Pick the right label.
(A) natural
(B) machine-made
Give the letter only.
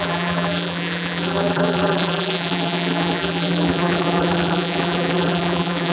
B